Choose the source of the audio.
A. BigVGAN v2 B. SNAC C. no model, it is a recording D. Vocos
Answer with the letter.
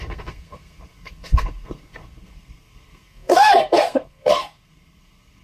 B